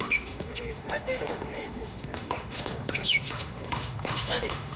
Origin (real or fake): fake